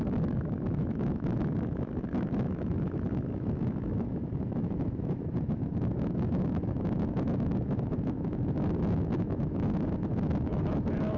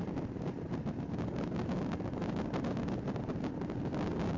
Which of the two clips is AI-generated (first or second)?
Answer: first